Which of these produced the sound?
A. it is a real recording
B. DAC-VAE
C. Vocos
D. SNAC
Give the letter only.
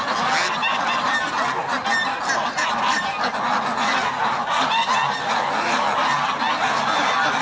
A